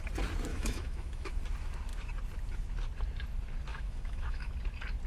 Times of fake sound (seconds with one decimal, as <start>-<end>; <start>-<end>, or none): 0.5-1.3; 3.7-4.5